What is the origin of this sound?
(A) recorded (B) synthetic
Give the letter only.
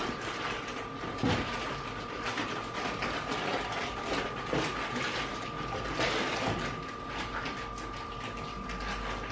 A